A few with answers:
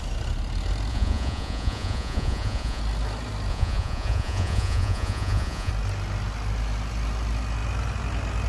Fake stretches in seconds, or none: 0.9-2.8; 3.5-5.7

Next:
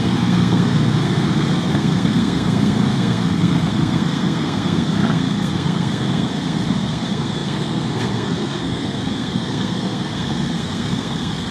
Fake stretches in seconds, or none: 0.0-11.5

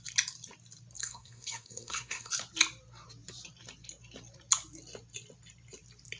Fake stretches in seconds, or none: 1.0-2.3